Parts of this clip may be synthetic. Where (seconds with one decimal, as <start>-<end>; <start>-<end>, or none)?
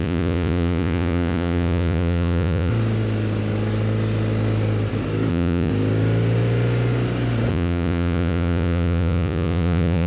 0.0-2.7; 5.3-5.7; 7.5-10.1